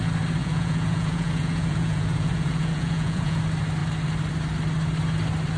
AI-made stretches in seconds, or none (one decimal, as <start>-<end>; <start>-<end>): 0.4-3.4